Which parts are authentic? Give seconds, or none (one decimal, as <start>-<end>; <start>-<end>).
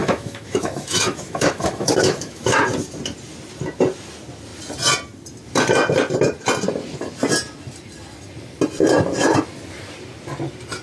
2.6-10.8